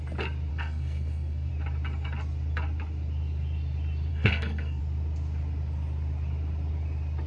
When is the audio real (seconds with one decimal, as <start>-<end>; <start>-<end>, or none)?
0.0-0.5; 1.5-4.1; 4.8-7.3